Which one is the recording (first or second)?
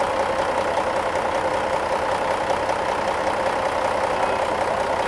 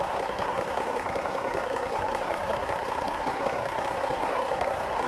first